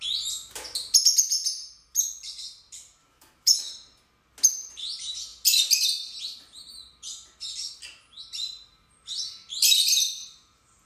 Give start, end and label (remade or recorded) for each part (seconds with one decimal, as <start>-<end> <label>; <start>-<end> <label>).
0.0-3.0 recorded; 3.0-3.7 remade; 3.7-10.9 recorded